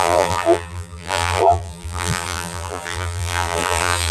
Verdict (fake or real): fake